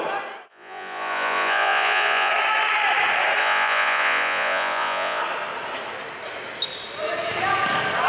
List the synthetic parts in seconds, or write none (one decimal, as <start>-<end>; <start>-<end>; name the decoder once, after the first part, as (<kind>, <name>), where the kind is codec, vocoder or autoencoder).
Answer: 0.5-2.3 (vocoder, Vocos); 3.4-5.2